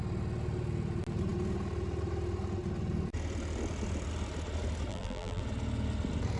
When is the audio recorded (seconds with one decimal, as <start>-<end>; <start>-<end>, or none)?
0.0-4.9; 5.4-6.4